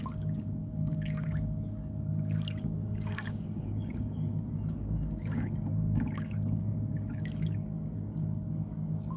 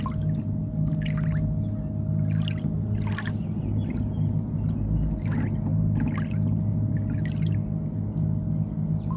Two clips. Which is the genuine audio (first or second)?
second